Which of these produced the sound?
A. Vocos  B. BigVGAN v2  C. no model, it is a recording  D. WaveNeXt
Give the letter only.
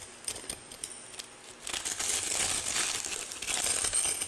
C